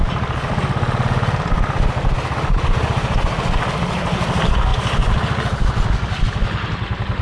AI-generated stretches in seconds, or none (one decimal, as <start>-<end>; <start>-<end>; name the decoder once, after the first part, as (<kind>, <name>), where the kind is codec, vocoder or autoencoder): none